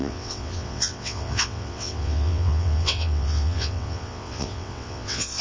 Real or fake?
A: fake